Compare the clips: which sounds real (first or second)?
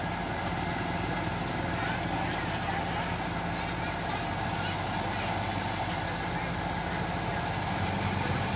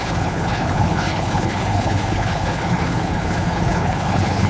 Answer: first